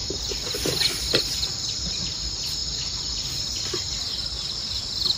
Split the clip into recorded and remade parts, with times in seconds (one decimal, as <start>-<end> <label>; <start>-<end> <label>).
0.0-5.2 recorded